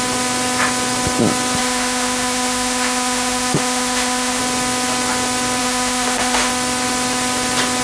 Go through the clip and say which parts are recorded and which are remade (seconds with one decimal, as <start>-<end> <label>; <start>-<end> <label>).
0.0-1.6 recorded; 1.6-4.4 remade; 4.4-5.6 recorded; 5.6-6.5 remade; 6.5-7.8 recorded